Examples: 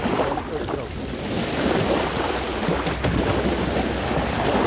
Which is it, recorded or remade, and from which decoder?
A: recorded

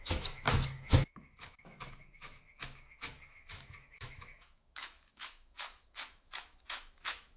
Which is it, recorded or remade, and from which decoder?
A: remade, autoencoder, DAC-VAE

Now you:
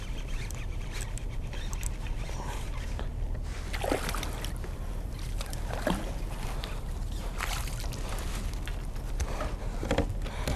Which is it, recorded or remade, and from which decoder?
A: recorded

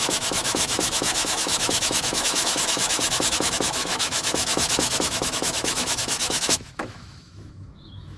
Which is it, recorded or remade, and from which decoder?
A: remade, autoencoder, DAC-VAE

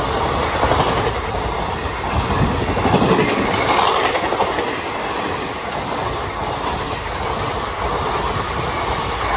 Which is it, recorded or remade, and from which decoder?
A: recorded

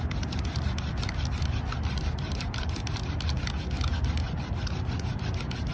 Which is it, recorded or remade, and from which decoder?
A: recorded